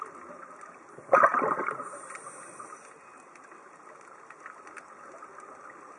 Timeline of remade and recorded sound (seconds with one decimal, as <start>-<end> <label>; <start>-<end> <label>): 0.0-6.0 recorded